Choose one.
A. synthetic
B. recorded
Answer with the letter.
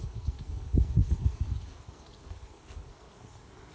A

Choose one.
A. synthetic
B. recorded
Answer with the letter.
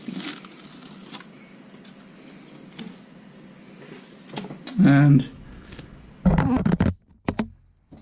B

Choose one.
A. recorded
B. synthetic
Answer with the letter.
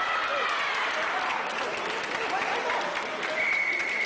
A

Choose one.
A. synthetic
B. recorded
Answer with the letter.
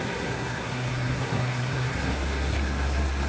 A